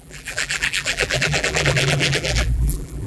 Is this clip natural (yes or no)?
no